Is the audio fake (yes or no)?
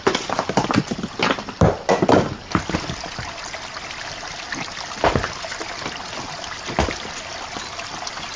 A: no